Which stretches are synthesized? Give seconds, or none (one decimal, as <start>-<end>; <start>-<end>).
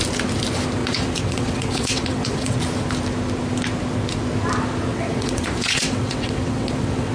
0.8-2.6; 4.9-7.1